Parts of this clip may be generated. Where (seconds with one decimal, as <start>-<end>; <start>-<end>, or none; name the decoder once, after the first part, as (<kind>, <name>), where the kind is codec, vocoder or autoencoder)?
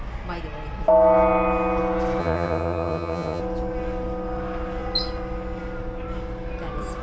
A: 2.2-3.4 (vocoder, HiFi-GAN)